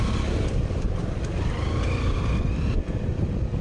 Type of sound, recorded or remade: recorded